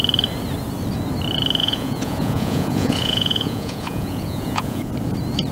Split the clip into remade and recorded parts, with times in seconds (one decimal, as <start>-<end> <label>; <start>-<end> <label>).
0.0-1.6 recorded; 1.6-4.9 remade; 4.9-5.5 recorded